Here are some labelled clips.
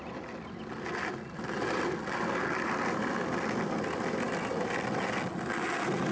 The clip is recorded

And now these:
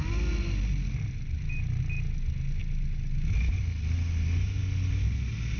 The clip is recorded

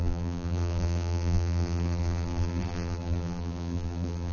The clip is remade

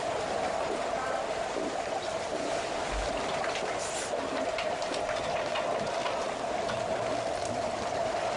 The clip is recorded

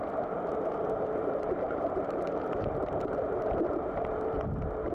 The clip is remade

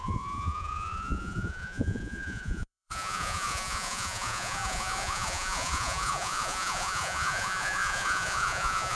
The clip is remade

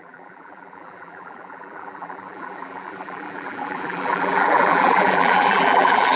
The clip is remade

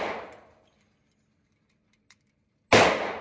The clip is recorded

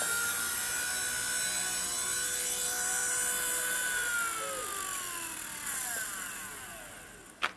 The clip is recorded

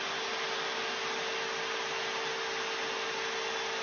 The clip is recorded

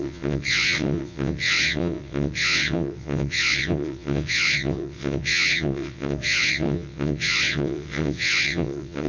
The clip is remade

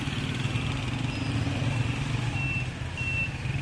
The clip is recorded